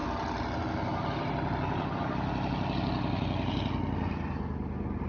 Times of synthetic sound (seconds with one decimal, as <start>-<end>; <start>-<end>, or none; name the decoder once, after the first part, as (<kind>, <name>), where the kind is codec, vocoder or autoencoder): none